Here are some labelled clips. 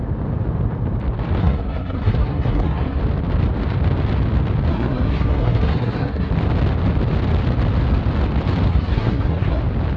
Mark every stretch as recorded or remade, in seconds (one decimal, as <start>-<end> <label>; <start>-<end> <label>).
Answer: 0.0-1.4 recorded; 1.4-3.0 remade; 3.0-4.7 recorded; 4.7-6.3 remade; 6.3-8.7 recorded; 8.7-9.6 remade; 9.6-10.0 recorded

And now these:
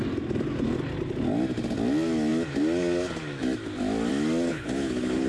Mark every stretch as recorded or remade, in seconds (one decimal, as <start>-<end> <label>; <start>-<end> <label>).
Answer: 0.0-4.5 recorded; 4.5-5.3 remade

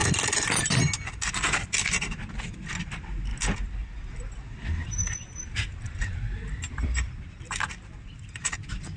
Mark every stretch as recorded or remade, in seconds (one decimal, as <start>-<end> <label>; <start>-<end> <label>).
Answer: 0.0-9.0 recorded

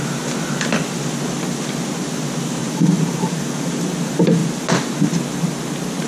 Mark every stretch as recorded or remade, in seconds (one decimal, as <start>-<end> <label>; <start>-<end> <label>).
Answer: 0.0-2.6 recorded; 2.6-3.8 remade; 3.8-6.1 recorded

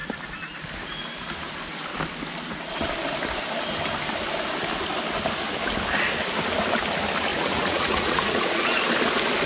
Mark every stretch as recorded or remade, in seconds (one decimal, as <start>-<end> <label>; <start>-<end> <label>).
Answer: 0.0-7.3 recorded; 7.3-8.8 remade; 8.8-9.5 recorded

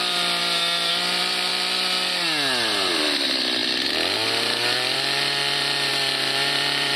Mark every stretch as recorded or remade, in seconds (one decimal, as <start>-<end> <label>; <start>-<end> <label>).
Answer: 0.0-0.4 remade; 0.4-0.9 recorded; 0.9-1.5 remade; 1.5-2.9 recorded; 2.9-7.0 remade